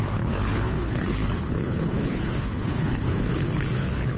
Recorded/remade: remade